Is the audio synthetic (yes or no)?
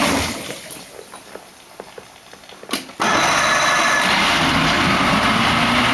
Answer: no